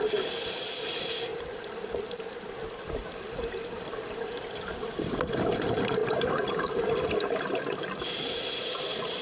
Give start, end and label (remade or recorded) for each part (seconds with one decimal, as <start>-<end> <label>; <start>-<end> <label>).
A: 0.0-6.0 recorded; 6.0-6.8 remade; 6.8-9.2 recorded